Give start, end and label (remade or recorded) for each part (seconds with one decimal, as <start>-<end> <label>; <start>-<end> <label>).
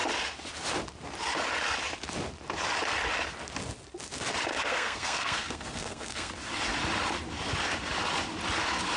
0.0-4.5 recorded; 4.5-6.3 remade; 6.3-9.0 recorded